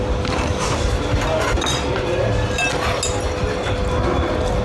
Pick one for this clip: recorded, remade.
recorded